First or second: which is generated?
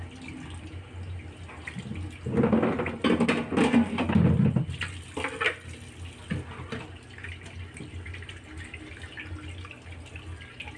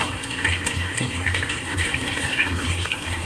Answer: second